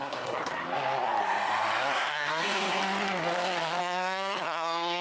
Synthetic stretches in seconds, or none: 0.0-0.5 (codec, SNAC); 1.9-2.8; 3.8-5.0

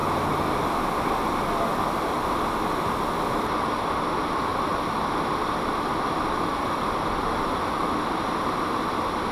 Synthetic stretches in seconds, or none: none

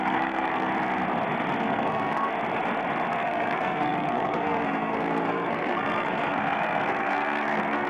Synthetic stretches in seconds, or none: 0.0-0.7 (codec, SNAC); 1.6-2.3; 3.1-7.9